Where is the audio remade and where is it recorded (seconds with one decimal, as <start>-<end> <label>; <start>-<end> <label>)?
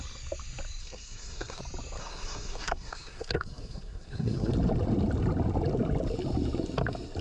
0.0-0.8 recorded; 0.8-1.6 remade; 1.6-2.0 recorded; 2.0-4.5 remade; 4.5-7.2 recorded